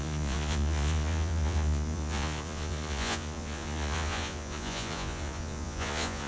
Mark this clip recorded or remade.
remade